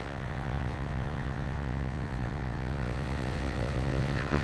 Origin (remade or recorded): remade